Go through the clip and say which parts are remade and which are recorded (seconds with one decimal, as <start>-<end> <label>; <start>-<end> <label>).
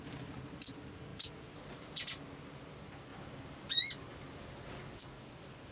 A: 0.0-1.1 recorded; 1.1-2.7 remade; 2.7-5.7 recorded